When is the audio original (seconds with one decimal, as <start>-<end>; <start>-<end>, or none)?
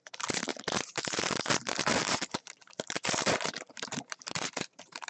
0.0-0.5; 1.5-1.9